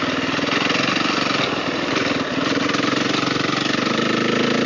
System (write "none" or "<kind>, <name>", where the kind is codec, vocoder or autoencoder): none